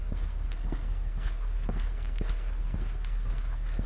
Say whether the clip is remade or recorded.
remade